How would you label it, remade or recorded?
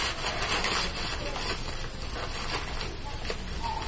recorded